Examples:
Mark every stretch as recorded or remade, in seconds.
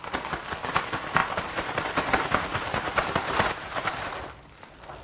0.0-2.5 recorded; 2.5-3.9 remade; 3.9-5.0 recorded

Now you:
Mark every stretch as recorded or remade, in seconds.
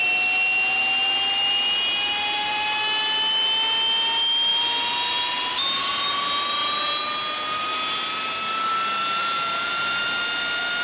0.0-4.5 recorded; 4.5-5.9 remade; 5.9-9.2 recorded; 9.2-10.0 remade; 10.0-10.8 recorded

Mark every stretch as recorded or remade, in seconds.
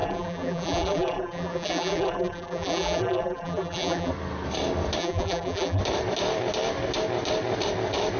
0.0-4.1 remade; 4.1-5.0 recorded; 5.0-5.8 remade; 5.8-8.2 recorded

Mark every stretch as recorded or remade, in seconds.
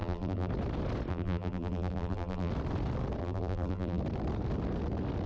0.0-0.5 remade; 0.5-1.1 recorded; 1.1-2.5 remade; 2.5-3.2 recorded; 3.2-4.0 remade; 4.0-5.3 recorded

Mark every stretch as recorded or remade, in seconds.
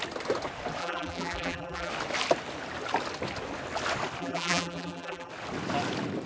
0.0-0.8 recorded; 0.8-1.9 remade; 1.9-4.2 recorded; 4.2-5.3 remade; 5.3-6.3 recorded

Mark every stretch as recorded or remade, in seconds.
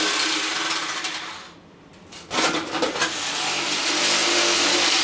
0.0-1.9 remade; 1.9-3.4 recorded; 3.4-4.2 remade; 4.2-5.0 recorded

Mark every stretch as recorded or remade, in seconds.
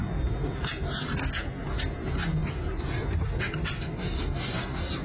0.0-0.7 remade; 0.7-2.4 recorded; 2.4-4.6 remade; 4.6-5.0 recorded